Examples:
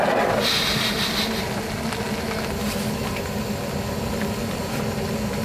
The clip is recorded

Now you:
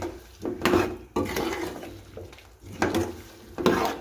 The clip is recorded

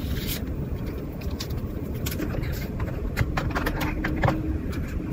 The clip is remade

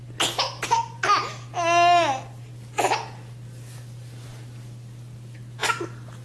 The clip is recorded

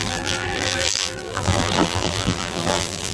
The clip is remade